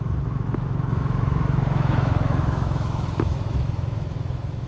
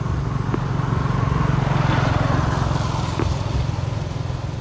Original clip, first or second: second